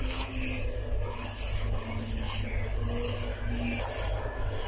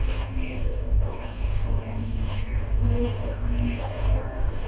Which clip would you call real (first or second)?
first